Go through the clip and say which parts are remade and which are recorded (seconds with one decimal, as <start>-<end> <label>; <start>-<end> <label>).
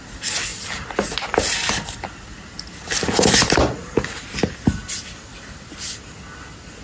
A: 0.0-6.8 recorded